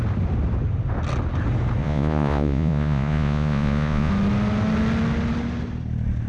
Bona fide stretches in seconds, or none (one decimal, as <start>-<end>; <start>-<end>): 0.0-1.8; 4.1-6.3